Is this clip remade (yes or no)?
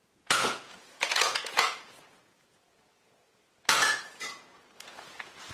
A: yes